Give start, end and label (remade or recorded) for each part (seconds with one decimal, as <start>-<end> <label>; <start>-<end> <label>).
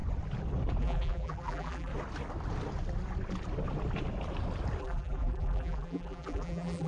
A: 0.0-0.8 recorded; 0.8-1.9 remade; 1.9-4.8 recorded; 4.8-6.9 remade